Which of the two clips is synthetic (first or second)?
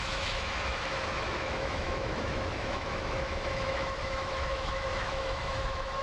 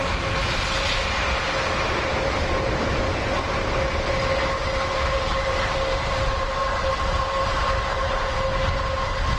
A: first